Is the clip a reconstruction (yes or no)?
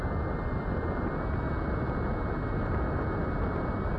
no